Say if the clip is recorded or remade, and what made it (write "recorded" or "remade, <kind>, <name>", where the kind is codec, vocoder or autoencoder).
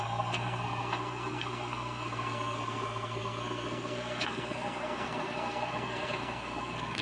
remade, codec, SNAC